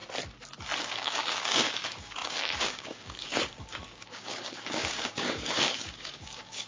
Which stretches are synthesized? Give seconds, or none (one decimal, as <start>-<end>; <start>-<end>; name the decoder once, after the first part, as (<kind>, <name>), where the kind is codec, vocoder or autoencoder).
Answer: 0.8-6.7 (codec, DAC)